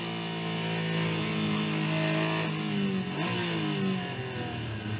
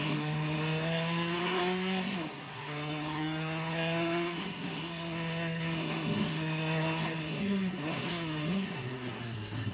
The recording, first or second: first